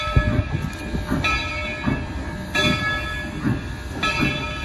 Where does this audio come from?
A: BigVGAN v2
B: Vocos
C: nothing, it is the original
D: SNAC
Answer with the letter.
C